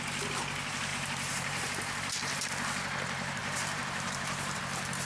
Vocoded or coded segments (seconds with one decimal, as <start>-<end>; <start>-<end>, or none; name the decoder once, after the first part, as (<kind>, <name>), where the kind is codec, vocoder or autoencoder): 0.9-2.5 (vocoder, BigVGAN v2); 3.4-4.6